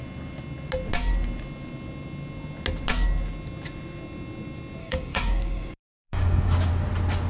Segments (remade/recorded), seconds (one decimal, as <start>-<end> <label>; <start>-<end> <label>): 0.0-4.8 recorded; 4.8-6.7 remade; 6.7-7.3 recorded